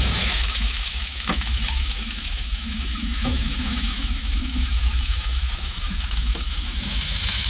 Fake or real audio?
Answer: fake